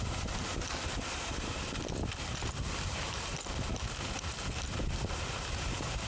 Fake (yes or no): no